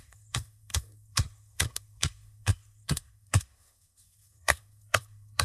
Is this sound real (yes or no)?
no